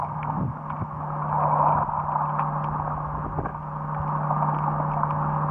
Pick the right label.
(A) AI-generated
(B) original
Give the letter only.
B